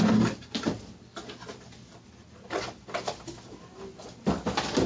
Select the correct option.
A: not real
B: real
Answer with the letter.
B